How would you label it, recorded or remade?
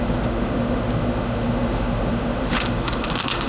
remade